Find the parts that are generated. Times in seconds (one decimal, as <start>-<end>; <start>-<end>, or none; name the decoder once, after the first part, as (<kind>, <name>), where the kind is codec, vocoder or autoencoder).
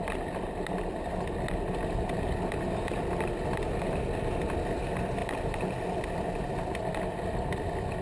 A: none